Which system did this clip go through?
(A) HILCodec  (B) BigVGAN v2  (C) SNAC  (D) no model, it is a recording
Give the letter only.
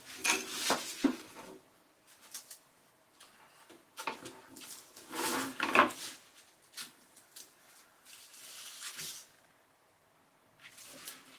D